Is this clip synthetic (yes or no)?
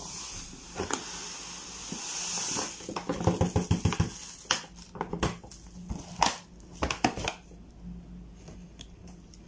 no